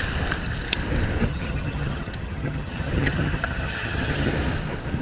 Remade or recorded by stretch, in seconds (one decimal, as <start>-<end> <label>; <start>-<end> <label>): 0.0-1.3 recorded; 1.3-4.3 remade; 4.3-5.0 recorded